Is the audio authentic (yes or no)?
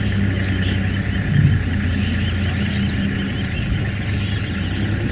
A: yes